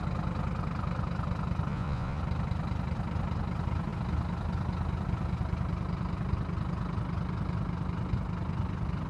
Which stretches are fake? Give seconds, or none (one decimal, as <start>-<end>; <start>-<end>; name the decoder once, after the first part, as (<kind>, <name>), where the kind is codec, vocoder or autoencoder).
1.7-2.2 (vocoder, Vocos)